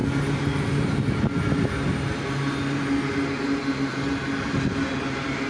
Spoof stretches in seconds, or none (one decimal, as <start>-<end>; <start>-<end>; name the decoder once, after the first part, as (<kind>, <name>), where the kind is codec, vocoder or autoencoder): none